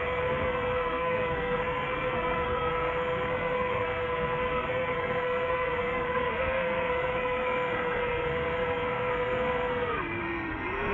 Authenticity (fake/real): fake